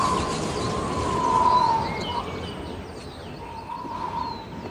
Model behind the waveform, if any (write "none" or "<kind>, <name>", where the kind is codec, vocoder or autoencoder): none